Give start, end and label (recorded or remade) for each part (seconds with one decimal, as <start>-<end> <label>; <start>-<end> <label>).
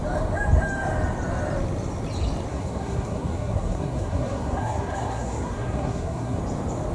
0.0-2.5 recorded; 2.5-6.4 remade; 6.4-6.9 recorded